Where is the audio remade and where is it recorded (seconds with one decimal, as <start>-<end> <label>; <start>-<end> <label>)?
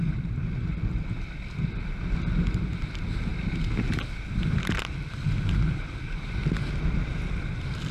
0.0-7.9 recorded